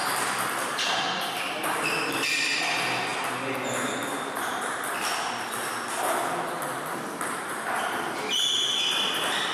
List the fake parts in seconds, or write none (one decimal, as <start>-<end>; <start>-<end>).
none

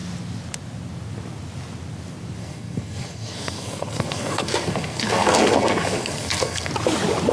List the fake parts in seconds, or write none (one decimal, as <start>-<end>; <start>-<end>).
2.4-6.7